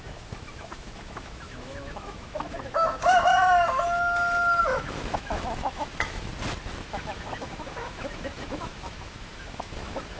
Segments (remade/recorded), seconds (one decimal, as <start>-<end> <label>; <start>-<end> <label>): 0.0-3.3 remade; 3.3-4.6 recorded; 4.6-6.3 remade; 6.3-6.9 recorded; 6.9-10.2 remade